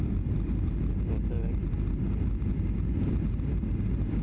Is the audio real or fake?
real